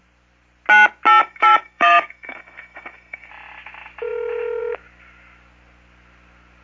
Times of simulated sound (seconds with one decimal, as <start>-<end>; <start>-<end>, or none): 1.2-3.3